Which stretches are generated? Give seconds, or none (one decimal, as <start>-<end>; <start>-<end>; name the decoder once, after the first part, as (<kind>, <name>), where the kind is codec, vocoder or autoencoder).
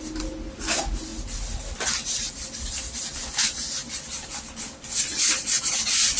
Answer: none